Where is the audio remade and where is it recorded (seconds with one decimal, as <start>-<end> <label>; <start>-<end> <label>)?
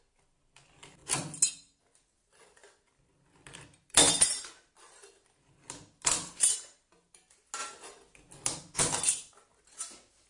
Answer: 0.0-10.3 recorded